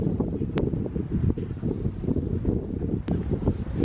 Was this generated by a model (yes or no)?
no